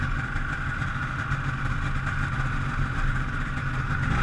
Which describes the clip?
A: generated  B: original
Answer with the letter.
B